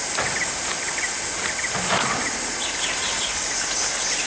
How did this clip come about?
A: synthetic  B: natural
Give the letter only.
B